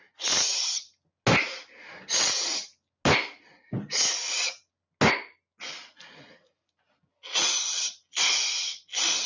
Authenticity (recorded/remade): recorded